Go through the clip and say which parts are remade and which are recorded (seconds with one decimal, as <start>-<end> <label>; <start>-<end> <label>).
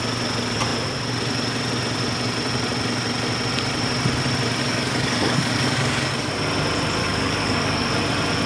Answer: 0.0-4.6 recorded; 4.6-6.3 remade; 6.3-7.0 recorded; 7.0-7.9 remade; 7.9-8.5 recorded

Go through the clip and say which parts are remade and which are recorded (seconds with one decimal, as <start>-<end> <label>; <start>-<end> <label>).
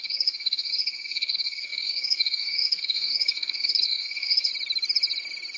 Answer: 0.0-4.5 remade; 4.5-5.6 recorded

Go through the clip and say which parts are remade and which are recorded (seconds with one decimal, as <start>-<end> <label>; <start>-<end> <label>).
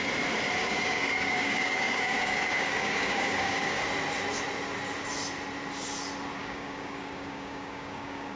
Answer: 0.0-0.6 recorded; 0.6-3.8 remade; 3.8-6.4 recorded; 6.4-8.4 remade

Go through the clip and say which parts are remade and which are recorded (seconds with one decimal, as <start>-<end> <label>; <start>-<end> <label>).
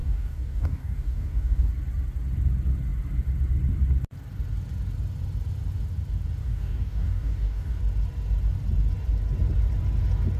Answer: 0.0-1.7 remade; 1.7-6.4 recorded; 6.4-7.8 remade; 7.8-10.4 recorded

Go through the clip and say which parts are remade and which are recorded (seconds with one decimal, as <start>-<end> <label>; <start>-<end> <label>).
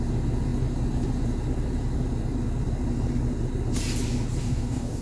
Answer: 0.0-4.4 recorded; 4.4-5.0 remade